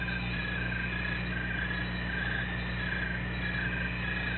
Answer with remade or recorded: recorded